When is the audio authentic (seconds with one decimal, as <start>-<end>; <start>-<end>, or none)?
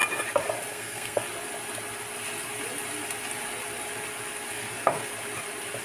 0.0-0.7; 1.3-4.5; 5.1-5.8